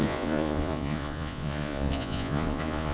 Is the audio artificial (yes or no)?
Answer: yes